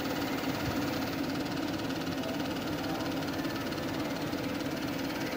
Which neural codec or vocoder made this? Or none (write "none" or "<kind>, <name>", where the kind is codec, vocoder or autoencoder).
none